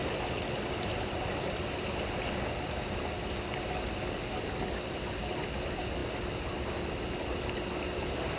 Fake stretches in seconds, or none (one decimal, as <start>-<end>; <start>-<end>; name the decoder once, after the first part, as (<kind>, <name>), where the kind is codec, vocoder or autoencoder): none